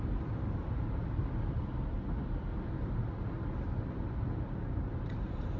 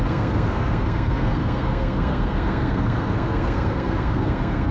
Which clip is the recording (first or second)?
first